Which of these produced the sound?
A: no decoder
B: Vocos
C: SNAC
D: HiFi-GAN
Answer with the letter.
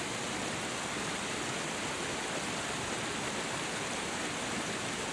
A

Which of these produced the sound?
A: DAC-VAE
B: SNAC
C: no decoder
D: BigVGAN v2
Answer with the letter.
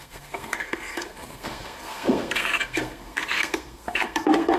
B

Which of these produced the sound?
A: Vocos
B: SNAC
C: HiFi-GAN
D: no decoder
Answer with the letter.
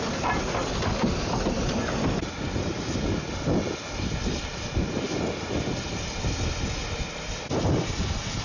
D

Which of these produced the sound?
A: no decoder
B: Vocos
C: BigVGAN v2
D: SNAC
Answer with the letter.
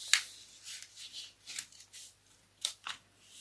A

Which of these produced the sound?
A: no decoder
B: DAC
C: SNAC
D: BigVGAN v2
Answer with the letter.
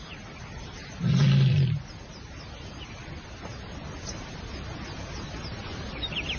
A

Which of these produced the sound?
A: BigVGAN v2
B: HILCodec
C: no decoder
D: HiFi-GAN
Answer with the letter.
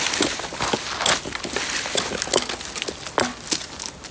C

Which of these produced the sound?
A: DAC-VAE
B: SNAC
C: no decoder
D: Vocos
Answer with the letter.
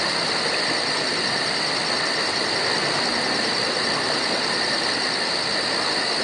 C